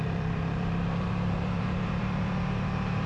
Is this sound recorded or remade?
remade